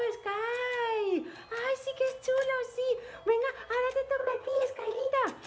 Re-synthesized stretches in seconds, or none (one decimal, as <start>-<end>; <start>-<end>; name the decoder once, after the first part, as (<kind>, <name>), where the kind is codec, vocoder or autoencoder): 4.2-5.1 (vocoder, HiFi-GAN)